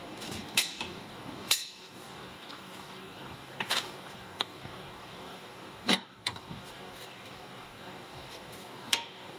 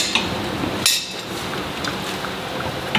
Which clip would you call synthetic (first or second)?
first